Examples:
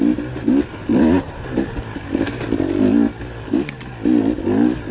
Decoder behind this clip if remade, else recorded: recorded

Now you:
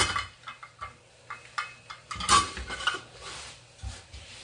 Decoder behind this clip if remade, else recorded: recorded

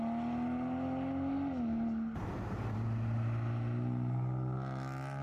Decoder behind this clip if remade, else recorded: recorded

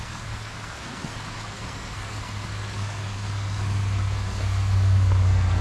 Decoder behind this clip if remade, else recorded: remade, codec, SNAC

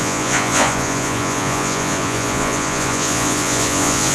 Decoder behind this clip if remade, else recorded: remade, vocoder, Vocos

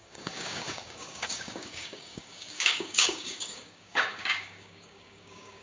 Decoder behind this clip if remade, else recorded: remade, codec, DAC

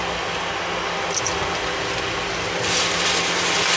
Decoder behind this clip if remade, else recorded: recorded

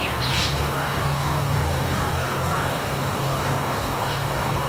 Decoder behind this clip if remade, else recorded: remade, codec, DAC